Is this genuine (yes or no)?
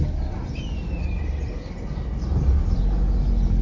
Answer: yes